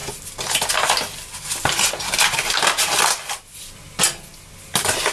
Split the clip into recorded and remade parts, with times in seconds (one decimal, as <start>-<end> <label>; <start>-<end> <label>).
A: 0.0-5.1 recorded